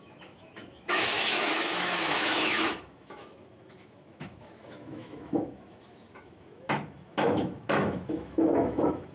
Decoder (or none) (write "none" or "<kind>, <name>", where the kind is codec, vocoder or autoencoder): autoencoder, DAC-VAE